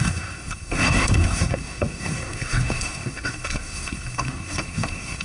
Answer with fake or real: fake